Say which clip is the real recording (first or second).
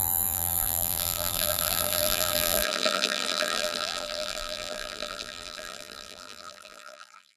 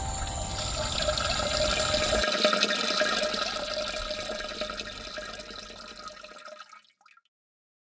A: second